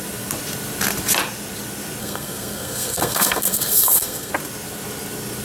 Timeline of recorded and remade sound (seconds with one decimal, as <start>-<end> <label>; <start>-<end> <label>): 0.0-2.0 recorded; 2.0-4.3 remade; 4.3-5.4 recorded